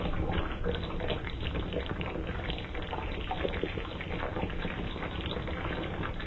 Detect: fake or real real